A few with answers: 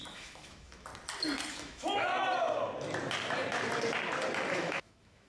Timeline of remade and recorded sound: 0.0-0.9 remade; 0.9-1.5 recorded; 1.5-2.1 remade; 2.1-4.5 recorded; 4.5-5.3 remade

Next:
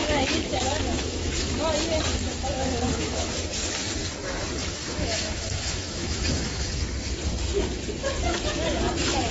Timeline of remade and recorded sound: 0.0-1.6 remade; 1.6-2.2 recorded; 2.2-3.3 remade; 3.3-4.6 recorded; 4.6-6.8 remade; 6.8-9.3 recorded